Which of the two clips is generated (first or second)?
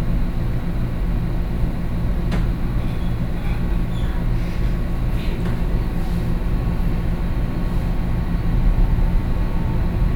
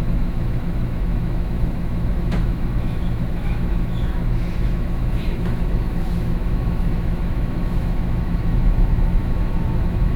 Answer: second